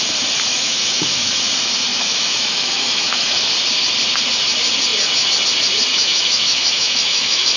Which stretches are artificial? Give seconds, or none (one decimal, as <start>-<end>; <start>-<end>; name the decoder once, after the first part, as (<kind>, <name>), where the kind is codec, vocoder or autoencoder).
0.5-1.3 (autoencoder, DAC-VAE); 1.9-3.4; 5.9-7.6